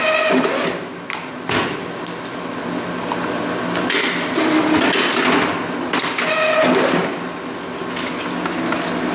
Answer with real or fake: real